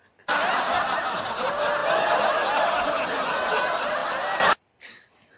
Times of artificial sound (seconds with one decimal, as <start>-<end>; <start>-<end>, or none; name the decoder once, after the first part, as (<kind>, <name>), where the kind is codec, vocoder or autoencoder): none